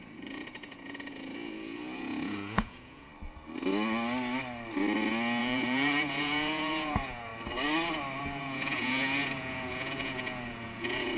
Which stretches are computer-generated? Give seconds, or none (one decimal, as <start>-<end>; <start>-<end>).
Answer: 0.0-3.1; 5.4-7.3; 8.2-11.2